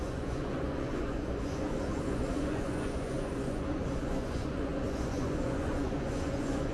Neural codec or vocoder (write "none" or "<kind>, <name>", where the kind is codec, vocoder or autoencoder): vocoder, Vocos